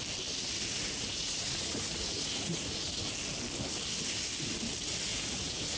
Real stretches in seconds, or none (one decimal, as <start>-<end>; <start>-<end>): 0.0-0.7; 2.9-5.1